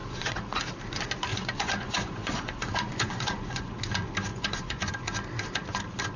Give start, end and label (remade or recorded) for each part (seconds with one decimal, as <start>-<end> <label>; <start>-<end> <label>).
0.0-0.6 remade; 0.6-1.3 recorded; 1.3-3.7 remade; 3.7-4.3 recorded; 4.3-4.9 remade; 4.9-6.2 recorded